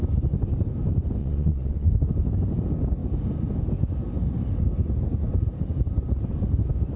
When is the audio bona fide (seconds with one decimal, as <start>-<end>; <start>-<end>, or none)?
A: 0.0-1.2; 1.9-7.0